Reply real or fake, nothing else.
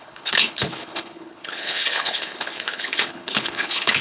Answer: fake